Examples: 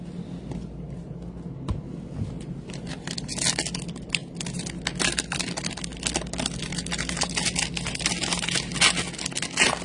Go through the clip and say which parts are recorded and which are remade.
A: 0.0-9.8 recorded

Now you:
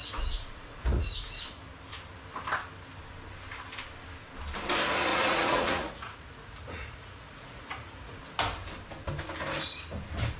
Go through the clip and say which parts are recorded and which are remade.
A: 0.0-1.4 remade; 1.4-5.1 recorded; 5.1-8.2 remade; 8.2-10.4 recorded

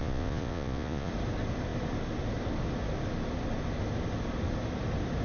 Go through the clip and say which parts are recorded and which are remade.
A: 0.0-1.1 remade; 1.1-5.2 recorded

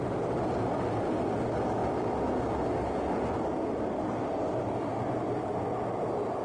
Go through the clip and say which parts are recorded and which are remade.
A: 0.0-6.4 recorded

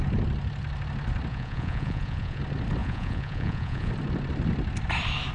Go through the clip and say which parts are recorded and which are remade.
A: 0.0-1.3 recorded; 1.3-2.4 remade; 2.4-2.8 recorded; 2.8-3.9 remade; 3.9-5.3 recorded

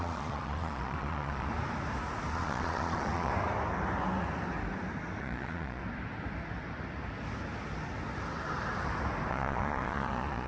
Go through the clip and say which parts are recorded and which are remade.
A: 0.0-1.5 remade; 1.5-2.3 recorded; 2.3-3.3 remade; 3.3-5.2 recorded; 5.2-5.8 remade; 5.8-9.3 recorded; 9.3-10.5 remade